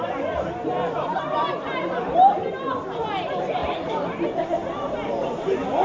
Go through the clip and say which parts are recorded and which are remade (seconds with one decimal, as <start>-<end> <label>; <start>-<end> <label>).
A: 0.0-5.8 recorded

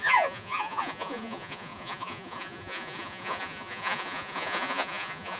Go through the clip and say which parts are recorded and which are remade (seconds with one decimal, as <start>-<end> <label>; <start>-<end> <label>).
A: 0.0-5.4 remade

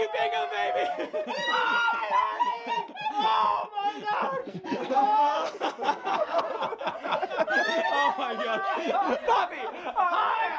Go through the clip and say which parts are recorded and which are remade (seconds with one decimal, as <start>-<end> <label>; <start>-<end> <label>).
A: 0.0-4.4 recorded; 4.4-6.4 remade; 6.4-10.6 recorded

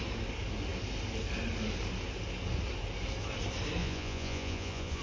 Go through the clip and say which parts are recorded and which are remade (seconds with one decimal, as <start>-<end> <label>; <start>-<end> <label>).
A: 0.0-3.8 recorded; 3.8-5.0 remade

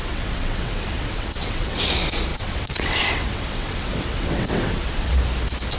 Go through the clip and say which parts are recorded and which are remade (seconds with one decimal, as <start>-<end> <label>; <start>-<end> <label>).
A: 0.0-1.8 remade; 1.8-2.3 recorded; 2.3-5.2 remade; 5.2-5.8 recorded

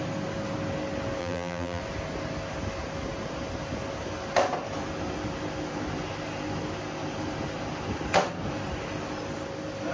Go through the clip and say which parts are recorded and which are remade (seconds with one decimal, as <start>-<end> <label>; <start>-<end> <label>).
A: 0.0-1.2 recorded; 1.2-1.8 remade; 1.8-9.9 recorded

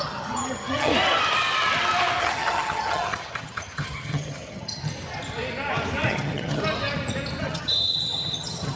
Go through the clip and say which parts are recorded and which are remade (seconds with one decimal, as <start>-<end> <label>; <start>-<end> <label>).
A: 0.0-0.9 remade; 0.9-2.2 recorded; 2.2-4.8 remade; 4.8-6.1 recorded; 6.1-6.6 remade; 6.6-7.4 recorded; 7.4-8.8 remade